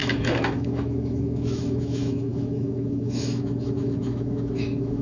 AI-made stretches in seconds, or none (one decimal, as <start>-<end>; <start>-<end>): 0.0-5.0